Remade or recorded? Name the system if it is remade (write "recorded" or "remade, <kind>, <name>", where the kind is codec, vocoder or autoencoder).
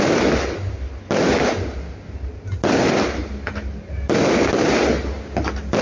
recorded